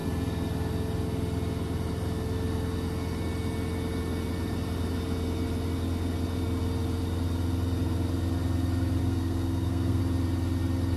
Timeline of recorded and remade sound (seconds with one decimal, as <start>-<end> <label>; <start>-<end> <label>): 0.0-9.0 recorded; 9.0-10.0 remade; 10.0-11.0 recorded